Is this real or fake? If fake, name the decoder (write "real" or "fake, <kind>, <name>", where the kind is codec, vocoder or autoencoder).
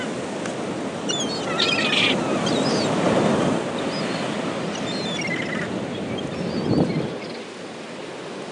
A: real